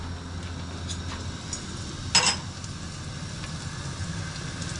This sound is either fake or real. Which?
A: real